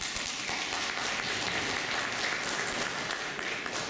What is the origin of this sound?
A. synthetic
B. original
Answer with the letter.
B